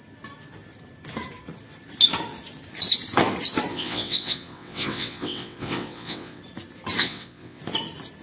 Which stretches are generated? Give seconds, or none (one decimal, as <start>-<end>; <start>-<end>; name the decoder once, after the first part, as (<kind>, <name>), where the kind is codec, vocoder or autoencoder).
3.7-6.4 (vocoder, WaveNeXt); 7.0-7.6